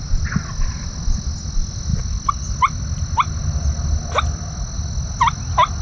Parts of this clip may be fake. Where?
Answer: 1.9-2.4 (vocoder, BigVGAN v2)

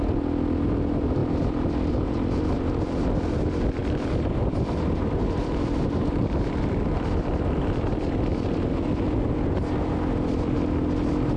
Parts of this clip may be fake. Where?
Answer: 3.8-6.7 (vocoder, BigVGAN v2)